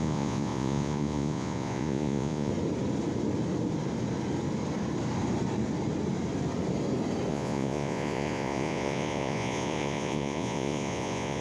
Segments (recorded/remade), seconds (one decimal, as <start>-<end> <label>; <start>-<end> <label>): 0.0-2.5 remade; 2.5-7.3 recorded; 7.3-11.4 remade

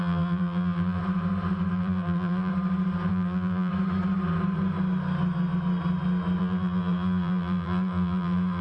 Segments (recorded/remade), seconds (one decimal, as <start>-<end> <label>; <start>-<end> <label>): 0.0-1.0 remade; 1.0-1.7 recorded; 1.7-2.5 remade; 2.5-3.1 recorded; 3.1-3.7 remade; 3.7-6.4 recorded; 6.4-8.6 remade

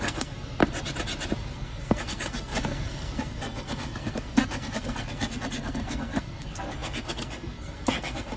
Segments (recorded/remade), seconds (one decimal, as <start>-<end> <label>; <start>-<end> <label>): 0.0-0.6 remade; 0.6-1.5 recorded; 1.5-8.4 remade

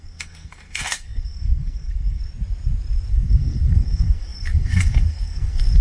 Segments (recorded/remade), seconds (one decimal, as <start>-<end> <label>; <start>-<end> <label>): 0.0-2.2 remade; 2.2-3.1 recorded; 3.1-5.8 remade